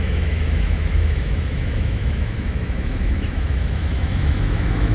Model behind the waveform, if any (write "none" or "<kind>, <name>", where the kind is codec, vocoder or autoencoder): autoencoder, DAC-VAE